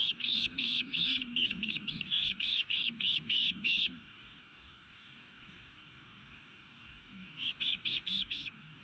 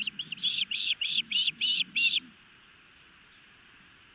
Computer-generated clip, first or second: first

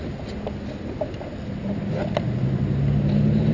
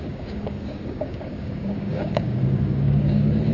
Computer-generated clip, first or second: second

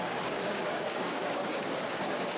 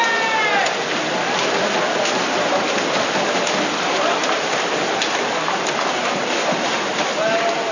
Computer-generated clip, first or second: first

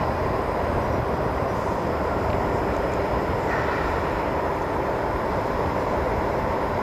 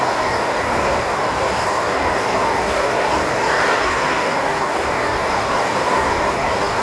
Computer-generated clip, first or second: second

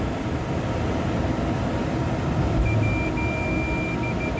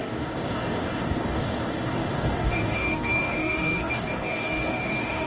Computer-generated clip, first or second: second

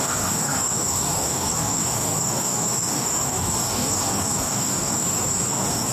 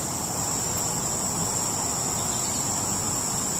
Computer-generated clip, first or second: first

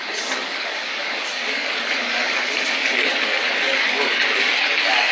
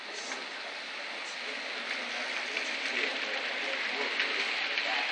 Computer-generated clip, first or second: first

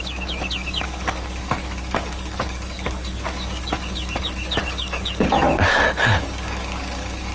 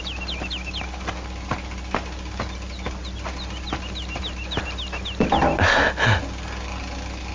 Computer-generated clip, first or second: first